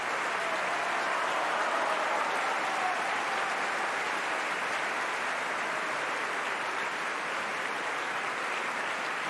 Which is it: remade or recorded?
recorded